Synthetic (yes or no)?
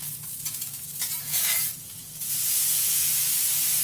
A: yes